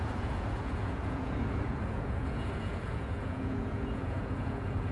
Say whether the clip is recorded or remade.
remade